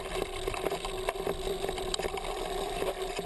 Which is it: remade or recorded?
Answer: recorded